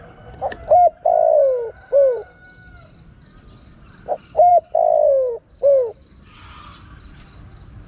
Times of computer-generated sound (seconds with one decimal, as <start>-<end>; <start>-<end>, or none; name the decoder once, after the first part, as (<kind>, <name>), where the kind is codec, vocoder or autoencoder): none